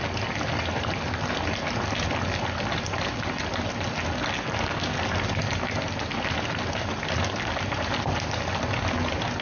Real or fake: real